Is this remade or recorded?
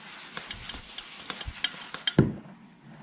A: recorded